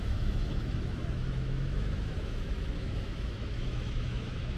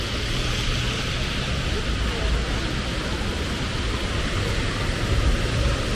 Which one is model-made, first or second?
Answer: first